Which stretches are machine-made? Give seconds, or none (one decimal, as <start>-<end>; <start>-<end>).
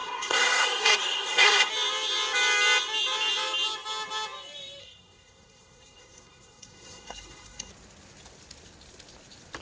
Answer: 0.0-1.7; 4.8-7.7